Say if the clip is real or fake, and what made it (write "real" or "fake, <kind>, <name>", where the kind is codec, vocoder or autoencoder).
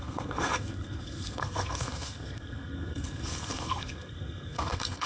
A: fake, codec, SNAC